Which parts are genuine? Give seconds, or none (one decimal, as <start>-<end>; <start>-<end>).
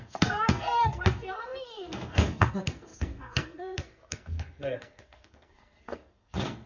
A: none